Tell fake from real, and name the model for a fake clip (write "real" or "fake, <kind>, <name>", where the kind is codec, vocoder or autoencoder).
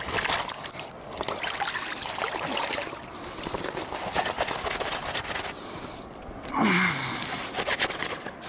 real